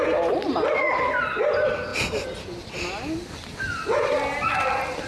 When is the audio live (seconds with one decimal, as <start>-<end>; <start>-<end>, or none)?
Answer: 0.0-5.1